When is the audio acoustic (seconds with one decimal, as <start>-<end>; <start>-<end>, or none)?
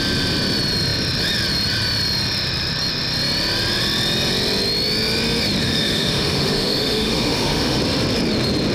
0.0-5.6; 7.8-8.7